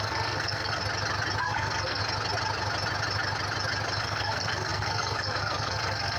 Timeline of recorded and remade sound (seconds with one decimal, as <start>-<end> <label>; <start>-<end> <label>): 0.0-0.8 remade; 0.8-1.4 recorded; 1.4-2.0 remade; 2.0-4.0 recorded; 4.0-6.2 remade